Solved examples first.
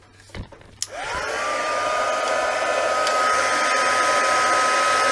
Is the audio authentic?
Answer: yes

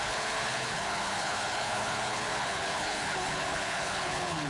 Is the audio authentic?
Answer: no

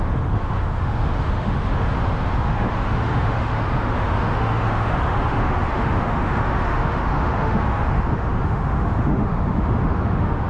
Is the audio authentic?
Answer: no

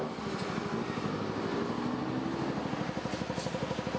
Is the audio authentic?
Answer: yes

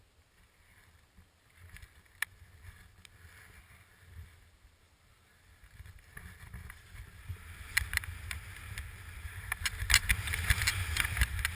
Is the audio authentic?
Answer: yes